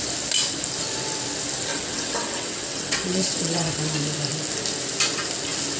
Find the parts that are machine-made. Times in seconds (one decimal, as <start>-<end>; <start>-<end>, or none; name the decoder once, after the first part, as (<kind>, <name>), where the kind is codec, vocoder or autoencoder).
1.7-3.8 (vocoder, WaveNeXt)